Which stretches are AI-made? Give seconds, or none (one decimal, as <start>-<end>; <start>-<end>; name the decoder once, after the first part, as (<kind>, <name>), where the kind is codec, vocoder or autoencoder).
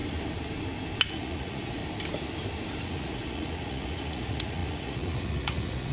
1.1-1.8 (vocoder, Vocos); 2.8-5.9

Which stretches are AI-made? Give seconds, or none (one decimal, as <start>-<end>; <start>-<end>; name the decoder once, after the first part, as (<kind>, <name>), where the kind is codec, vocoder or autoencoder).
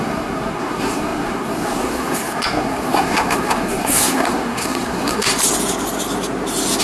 0.0-5.3 (codec, SNAC)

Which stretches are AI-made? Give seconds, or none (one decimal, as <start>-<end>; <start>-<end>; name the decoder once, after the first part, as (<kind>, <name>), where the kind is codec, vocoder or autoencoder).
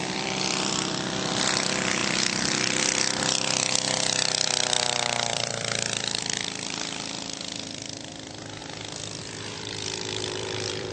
0.0-8.6 (vocoder, BigVGAN v2); 9.2-10.9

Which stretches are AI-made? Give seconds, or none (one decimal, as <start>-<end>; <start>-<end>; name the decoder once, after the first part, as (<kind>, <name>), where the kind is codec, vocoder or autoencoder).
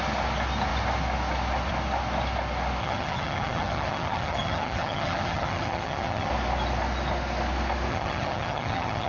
2.8-6.3 (vocoder, HiFi-GAN); 7.9-9.1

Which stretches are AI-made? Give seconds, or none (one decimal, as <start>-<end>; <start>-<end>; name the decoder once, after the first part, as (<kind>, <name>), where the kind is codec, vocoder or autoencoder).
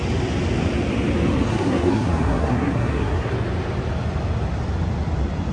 1.5-3.3 (codec, SNAC)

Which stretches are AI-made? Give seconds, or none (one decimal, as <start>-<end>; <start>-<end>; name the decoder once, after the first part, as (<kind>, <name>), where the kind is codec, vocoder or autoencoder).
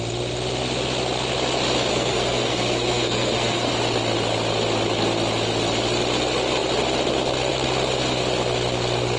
1.9-3.7 (codec, SNAC)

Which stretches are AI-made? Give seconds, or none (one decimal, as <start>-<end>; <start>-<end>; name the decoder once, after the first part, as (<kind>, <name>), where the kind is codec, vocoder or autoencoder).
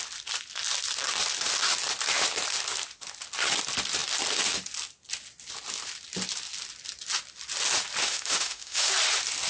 8.0-8.9 (autoencoder, DAC-VAE)